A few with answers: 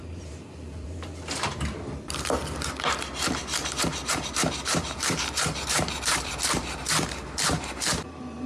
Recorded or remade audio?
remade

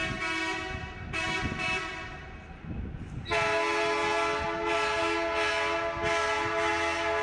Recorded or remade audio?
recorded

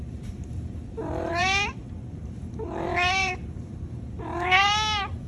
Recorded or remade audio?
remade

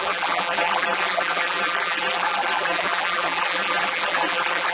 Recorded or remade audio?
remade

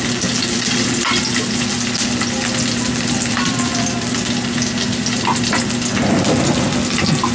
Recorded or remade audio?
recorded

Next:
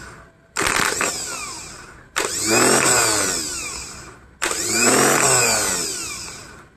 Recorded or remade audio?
recorded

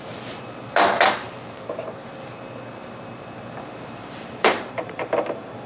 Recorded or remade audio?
remade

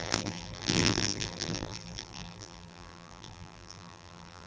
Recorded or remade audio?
remade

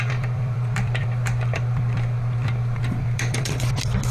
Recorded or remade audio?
remade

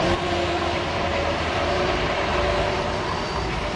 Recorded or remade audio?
remade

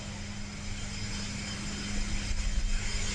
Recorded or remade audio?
recorded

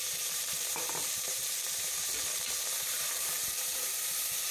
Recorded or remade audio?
remade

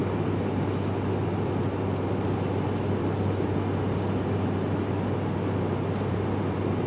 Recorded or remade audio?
recorded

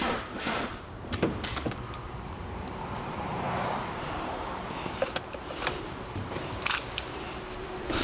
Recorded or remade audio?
remade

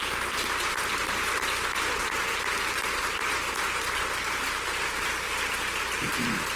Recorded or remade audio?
recorded